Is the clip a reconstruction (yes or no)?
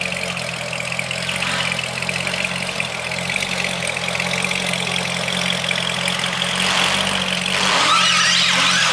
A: no